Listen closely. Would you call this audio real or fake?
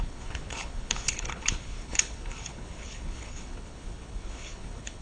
fake